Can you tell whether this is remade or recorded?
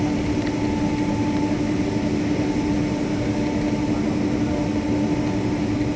recorded